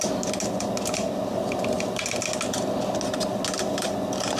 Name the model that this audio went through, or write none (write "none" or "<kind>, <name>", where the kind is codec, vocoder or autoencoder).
none